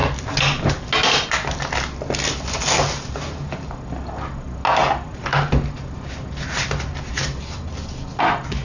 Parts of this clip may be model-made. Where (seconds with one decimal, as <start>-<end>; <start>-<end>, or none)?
none